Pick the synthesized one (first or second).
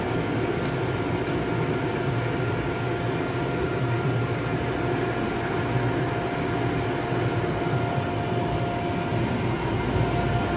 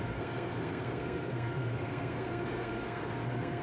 second